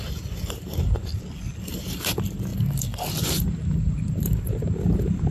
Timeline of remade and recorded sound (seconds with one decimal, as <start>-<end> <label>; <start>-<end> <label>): 0.0-1.1 remade; 1.1-1.7 recorded; 1.7-2.5 remade; 2.5-3.2 recorded; 3.2-5.3 remade

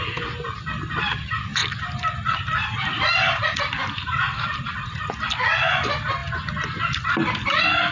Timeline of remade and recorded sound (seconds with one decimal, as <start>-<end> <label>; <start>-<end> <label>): 0.0-6.2 remade; 6.2-6.8 recorded; 6.8-7.9 remade

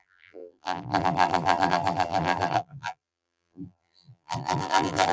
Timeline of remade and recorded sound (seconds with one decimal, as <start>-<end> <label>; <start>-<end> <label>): 0.0-5.1 remade

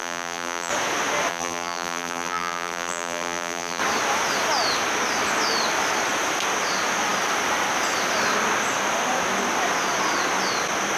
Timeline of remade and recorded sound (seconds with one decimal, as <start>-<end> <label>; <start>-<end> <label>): 0.0-0.7 remade; 0.7-1.3 recorded; 1.3-3.8 remade; 3.8-11.0 recorded

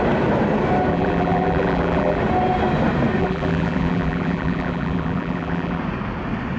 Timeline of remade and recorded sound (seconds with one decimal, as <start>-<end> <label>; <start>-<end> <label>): 0.0-0.9 recorded; 0.9-2.2 remade; 2.2-3.2 recorded; 3.2-5.8 remade; 5.8-6.6 recorded